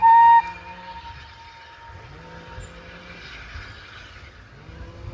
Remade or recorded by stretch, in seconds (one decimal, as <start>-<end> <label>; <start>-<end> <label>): 0.0-5.1 recorded